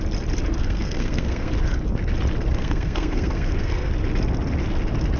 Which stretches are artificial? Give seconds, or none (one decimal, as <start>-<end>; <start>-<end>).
0.6-1.5; 2.6-3.9

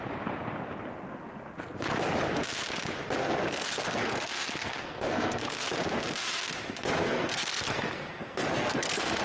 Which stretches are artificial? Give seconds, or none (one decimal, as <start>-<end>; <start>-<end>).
3.2-5.7; 7.0-9.2

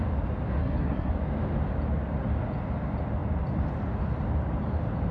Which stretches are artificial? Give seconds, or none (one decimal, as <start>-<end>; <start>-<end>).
0.6-1.1

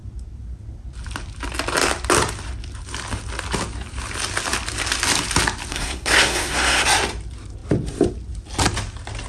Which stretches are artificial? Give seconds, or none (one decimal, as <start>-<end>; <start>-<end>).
5.7-6.8